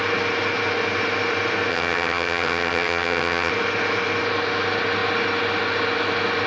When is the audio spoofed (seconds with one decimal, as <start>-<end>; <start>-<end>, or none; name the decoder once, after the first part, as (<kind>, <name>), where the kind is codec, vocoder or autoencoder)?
1.7-3.5 (vocoder, HiFi-GAN)